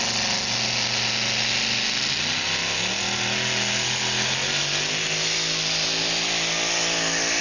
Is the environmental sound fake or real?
real